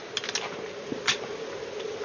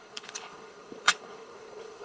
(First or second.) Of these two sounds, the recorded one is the first